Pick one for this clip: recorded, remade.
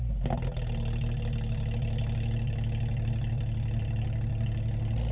recorded